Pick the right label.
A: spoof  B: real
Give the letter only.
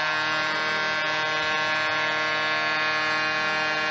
B